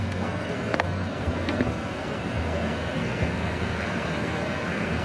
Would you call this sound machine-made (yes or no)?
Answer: yes